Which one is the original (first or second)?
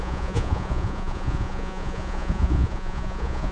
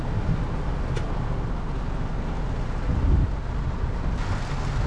second